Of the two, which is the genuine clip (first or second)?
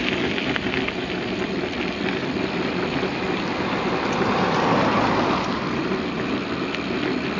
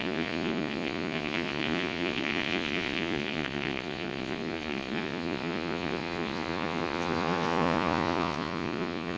first